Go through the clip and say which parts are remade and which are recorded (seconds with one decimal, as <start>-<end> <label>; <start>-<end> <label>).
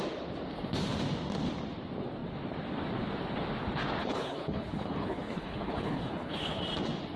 0.0-4.0 recorded; 4.0-6.6 remade; 6.6-7.2 recorded